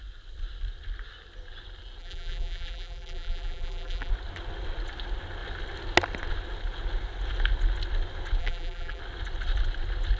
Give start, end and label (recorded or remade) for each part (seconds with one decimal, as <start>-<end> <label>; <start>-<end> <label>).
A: 0.0-2.0 recorded; 2.0-4.1 remade; 4.1-8.4 recorded; 8.4-9.0 remade; 9.0-10.2 recorded